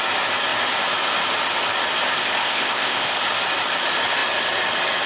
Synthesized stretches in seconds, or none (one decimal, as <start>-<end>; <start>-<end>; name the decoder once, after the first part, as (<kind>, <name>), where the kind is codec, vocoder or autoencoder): 2.2-3.2 (codec, ZipCodec)